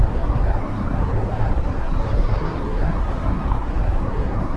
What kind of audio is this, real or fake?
fake